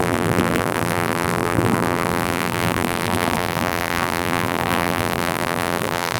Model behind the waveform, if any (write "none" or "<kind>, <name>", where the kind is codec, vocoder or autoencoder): vocoder, BigVGAN v2